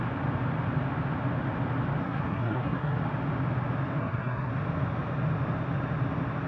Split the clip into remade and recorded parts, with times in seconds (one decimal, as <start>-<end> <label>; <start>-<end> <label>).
0.0-2.0 recorded; 2.0-3.0 remade; 3.0-4.0 recorded; 4.0-4.5 remade; 4.5-6.5 recorded